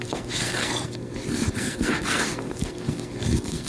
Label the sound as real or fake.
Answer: fake